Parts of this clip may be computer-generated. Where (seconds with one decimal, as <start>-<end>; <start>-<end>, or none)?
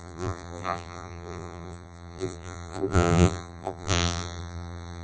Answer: 0.0-5.0